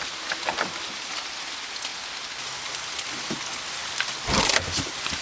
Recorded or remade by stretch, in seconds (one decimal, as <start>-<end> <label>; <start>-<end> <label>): 0.0-5.2 recorded